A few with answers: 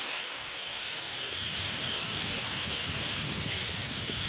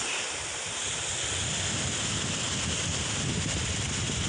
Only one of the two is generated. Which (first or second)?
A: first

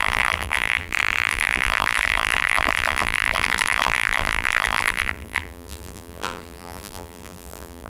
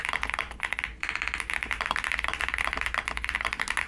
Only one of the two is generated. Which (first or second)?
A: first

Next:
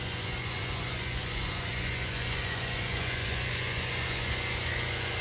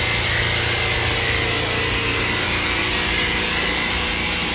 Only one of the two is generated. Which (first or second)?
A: first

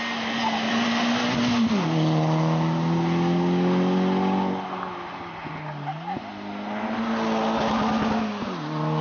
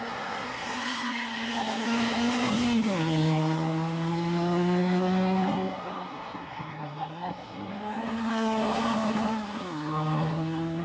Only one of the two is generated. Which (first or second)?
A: second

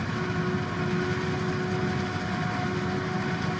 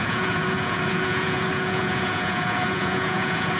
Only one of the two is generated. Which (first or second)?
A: second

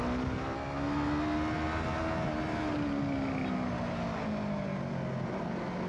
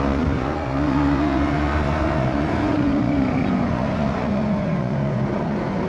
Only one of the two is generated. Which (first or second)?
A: second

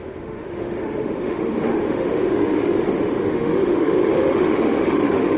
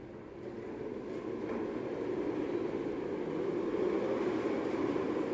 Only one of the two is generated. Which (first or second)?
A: first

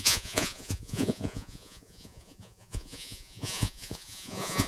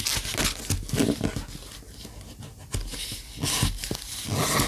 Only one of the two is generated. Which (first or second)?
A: first